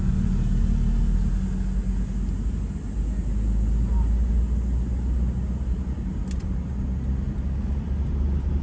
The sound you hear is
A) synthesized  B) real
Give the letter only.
B